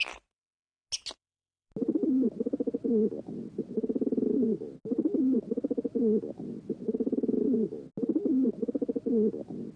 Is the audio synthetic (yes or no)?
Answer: no